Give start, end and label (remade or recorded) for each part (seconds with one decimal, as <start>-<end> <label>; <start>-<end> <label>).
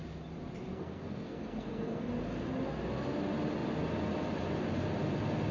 0.0-0.7 recorded; 0.7-2.1 remade; 2.1-5.5 recorded